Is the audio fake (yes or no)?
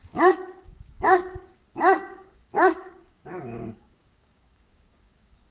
yes